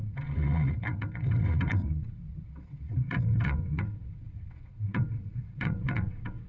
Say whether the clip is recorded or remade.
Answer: remade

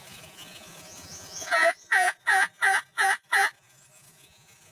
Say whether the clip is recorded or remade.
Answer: remade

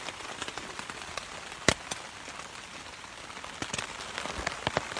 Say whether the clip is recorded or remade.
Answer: recorded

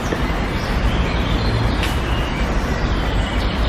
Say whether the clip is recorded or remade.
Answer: recorded